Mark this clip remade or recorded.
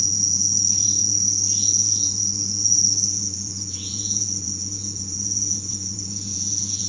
remade